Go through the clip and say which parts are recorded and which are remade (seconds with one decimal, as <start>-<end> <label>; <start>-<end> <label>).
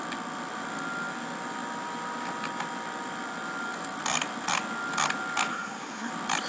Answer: 0.0-5.5 recorded; 5.5-6.1 remade; 6.1-6.5 recorded